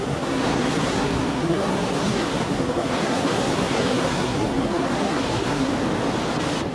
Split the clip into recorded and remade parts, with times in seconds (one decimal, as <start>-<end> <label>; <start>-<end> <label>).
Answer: 0.0-5.7 remade; 5.7-6.7 recorded